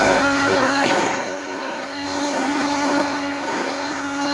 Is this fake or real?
fake